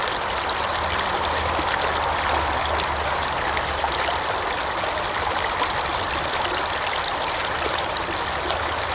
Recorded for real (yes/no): yes